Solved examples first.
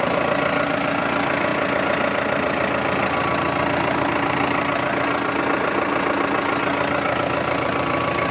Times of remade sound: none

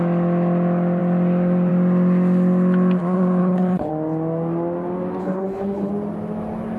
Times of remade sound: 3.4-3.9 (codec, HILCodec); 5.2-5.9

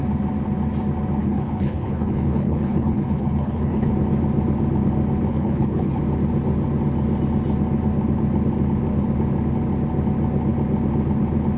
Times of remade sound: 1.2-3.9 (codec, HILCodec); 5.3-6.0

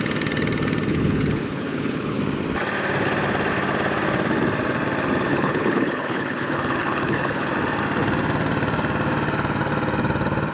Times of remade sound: 0.9-2.2 (codec, HILCodec); 5.3-7.5

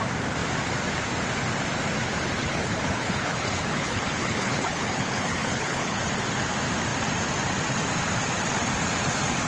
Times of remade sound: 2.4-6.0 (codec, HILCodec)